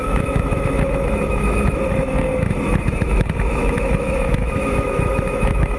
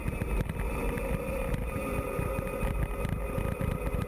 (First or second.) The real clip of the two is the second